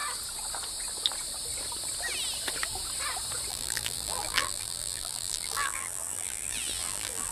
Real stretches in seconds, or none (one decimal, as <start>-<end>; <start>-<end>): 0.0-3.5